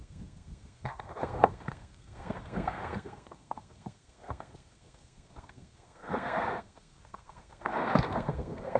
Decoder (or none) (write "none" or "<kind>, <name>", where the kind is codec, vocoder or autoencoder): codec, SNAC